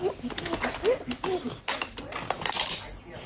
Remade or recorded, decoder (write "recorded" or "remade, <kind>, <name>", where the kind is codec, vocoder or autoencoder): recorded